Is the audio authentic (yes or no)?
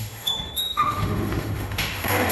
no